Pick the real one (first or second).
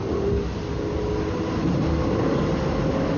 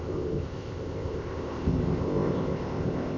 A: first